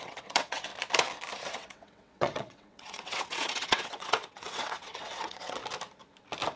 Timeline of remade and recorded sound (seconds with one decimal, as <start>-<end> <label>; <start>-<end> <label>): 0.0-0.7 remade; 0.7-1.5 recorded; 1.5-5.6 remade; 5.6-6.6 recorded